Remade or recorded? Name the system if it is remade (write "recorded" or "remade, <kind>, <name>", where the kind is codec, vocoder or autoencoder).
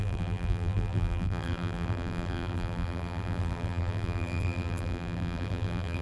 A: remade, vocoder, BigVGAN v2